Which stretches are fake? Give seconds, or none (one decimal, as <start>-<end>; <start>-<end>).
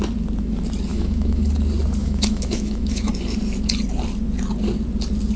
0.9-1.5; 2.0-3.1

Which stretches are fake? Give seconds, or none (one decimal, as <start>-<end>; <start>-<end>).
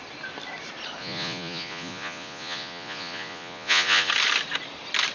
1.0-4.1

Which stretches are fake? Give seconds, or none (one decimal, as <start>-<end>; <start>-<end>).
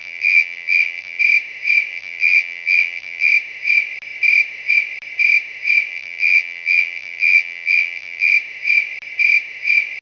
0.0-1.2; 1.9-3.3; 5.9-8.3